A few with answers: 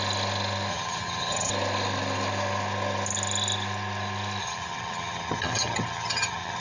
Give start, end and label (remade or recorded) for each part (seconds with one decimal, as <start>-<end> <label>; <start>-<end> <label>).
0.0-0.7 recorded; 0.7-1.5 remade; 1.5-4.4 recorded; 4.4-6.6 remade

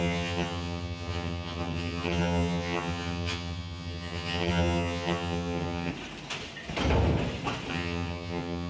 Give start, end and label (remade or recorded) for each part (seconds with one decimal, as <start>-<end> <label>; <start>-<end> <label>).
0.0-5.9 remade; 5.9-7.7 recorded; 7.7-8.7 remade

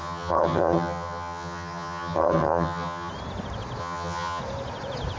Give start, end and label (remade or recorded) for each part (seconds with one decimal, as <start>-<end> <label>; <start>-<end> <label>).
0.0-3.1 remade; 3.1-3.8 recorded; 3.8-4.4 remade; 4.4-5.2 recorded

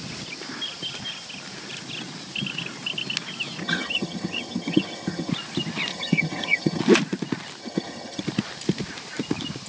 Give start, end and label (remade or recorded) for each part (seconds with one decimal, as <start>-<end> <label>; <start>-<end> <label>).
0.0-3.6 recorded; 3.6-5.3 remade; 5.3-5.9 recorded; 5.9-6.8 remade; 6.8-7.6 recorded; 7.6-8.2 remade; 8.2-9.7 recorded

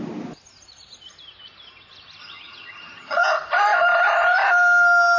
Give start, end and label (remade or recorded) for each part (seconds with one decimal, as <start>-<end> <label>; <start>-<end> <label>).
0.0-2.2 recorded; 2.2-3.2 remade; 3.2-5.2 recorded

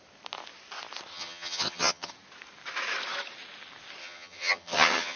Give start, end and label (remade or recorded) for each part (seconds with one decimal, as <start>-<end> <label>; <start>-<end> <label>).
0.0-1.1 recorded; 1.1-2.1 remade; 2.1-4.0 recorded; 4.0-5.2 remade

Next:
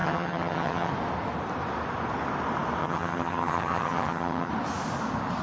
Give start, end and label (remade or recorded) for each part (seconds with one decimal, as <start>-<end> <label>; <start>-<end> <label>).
0.0-0.9 remade; 0.9-2.8 recorded; 2.8-4.5 remade; 4.5-5.4 recorded